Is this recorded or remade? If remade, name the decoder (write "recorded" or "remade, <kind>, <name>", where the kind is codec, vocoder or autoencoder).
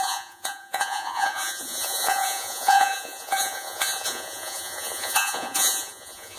remade, vocoder, Vocos